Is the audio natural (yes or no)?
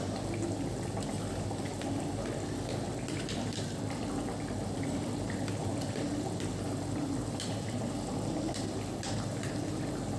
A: yes